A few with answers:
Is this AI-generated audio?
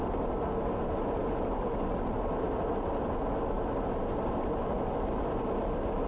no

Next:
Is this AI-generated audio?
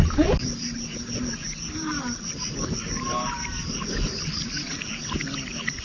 no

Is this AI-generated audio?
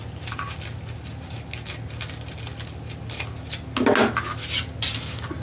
no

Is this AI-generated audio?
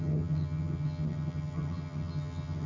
yes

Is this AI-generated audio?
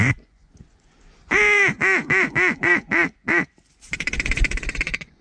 yes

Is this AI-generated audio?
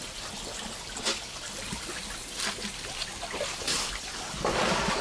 no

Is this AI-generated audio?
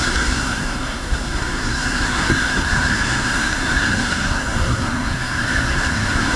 yes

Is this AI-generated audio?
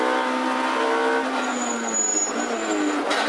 no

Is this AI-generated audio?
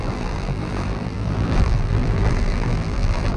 yes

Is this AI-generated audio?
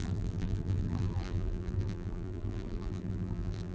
yes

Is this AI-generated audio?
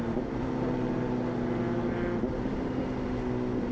no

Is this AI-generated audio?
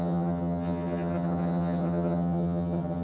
yes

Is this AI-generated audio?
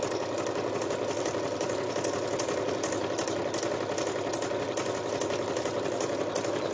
no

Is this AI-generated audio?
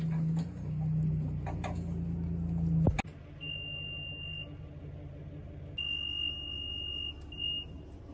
no